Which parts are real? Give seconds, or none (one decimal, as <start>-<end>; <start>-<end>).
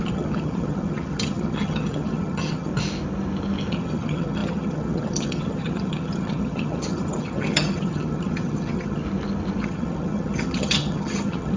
2.7-3.7; 9.0-9.6